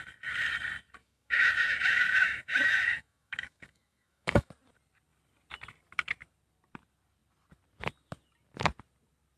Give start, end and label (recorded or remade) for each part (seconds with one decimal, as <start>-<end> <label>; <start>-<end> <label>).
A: 0.0-1.0 recorded; 1.0-4.5 remade; 4.5-9.4 recorded

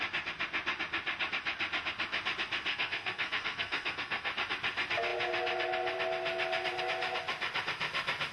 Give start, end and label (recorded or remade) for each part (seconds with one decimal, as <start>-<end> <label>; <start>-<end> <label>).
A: 0.0-2.7 recorded; 2.7-4.3 remade; 4.3-8.3 recorded

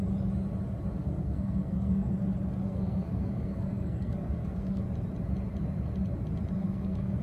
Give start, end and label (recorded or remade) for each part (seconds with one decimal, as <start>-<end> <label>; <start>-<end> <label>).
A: 0.0-1.0 recorded; 1.0-2.1 remade; 2.1-2.6 recorded; 2.6-4.8 remade; 4.8-6.6 recorded; 6.6-7.2 remade

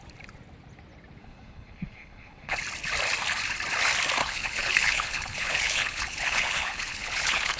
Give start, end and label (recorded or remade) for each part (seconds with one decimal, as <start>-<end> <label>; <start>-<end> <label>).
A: 0.0-1.2 recorded; 1.2-2.6 remade; 2.6-4.2 recorded; 4.2-7.6 remade